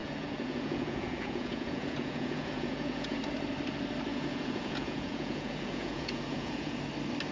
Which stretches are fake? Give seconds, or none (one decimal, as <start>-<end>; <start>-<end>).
0.0-3.2; 4.1-6.8